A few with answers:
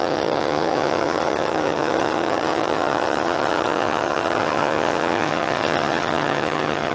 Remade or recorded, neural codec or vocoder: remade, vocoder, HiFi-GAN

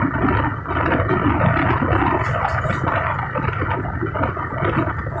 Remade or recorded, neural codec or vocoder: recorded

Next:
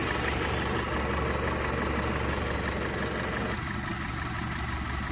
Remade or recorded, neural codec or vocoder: recorded